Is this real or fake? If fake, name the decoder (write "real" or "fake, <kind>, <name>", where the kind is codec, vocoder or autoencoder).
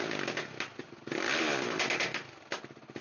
real